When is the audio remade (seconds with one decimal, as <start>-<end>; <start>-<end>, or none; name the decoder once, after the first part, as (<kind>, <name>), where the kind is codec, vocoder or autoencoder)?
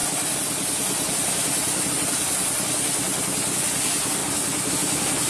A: none